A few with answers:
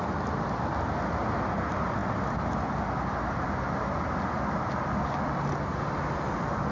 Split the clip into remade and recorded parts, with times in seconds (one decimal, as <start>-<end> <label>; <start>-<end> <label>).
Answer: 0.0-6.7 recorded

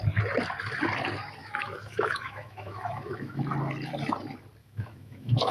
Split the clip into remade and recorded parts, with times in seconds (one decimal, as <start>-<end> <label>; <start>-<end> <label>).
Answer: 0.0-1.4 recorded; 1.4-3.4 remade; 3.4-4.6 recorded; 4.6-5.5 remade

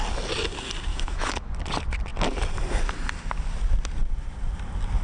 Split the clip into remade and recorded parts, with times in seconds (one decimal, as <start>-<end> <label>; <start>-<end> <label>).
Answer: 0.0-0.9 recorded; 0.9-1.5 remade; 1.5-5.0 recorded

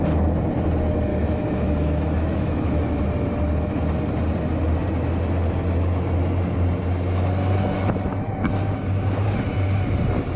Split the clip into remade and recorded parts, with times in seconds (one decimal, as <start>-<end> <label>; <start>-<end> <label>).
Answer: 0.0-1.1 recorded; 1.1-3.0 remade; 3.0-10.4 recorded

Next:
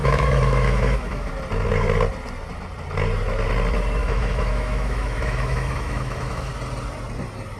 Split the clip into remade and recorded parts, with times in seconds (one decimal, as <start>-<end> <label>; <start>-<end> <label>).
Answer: 0.0-1.3 remade; 1.3-4.0 recorded; 4.0-6.5 remade; 6.5-7.6 recorded

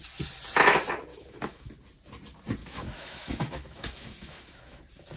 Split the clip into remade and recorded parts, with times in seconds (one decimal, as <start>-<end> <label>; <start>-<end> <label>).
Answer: 0.0-1.1 recorded; 1.1-1.7 remade; 1.7-2.6 recorded; 2.6-4.8 remade; 4.8-5.2 recorded

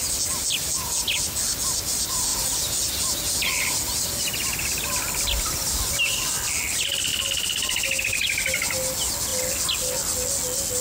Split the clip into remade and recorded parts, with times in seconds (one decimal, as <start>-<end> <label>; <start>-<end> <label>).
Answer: 0.0-10.8 recorded